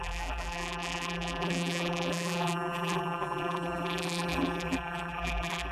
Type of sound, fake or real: fake